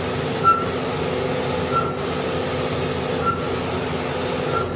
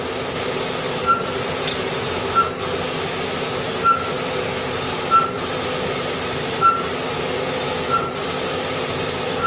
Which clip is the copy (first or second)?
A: second